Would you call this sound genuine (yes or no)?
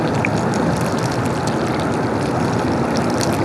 yes